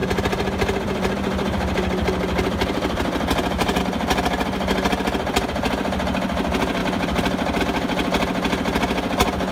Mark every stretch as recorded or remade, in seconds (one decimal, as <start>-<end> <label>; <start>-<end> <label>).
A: 0.0-3.8 remade; 3.8-6.8 recorded; 6.8-7.6 remade; 7.6-9.5 recorded